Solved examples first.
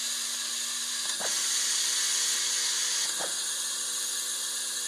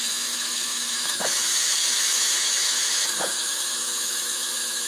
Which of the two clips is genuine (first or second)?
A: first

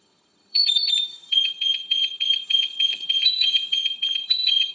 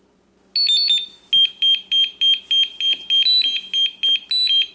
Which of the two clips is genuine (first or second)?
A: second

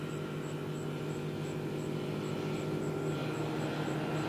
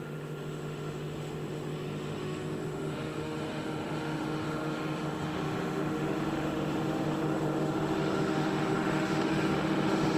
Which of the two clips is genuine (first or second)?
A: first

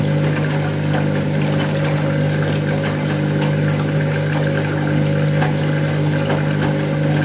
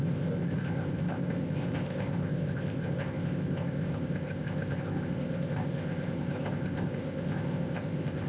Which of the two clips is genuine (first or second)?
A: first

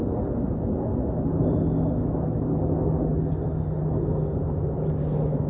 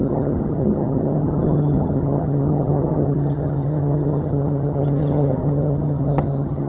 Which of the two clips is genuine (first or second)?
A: first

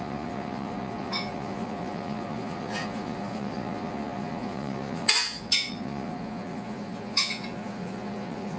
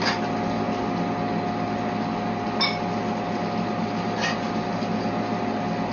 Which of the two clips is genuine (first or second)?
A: second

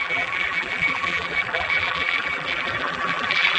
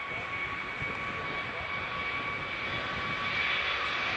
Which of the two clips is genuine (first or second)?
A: second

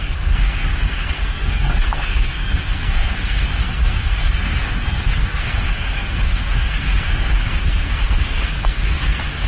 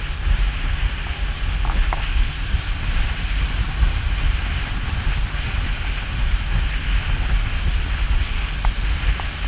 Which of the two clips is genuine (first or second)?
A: second